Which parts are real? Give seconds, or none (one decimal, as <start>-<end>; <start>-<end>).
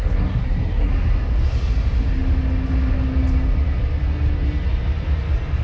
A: 0.9-5.6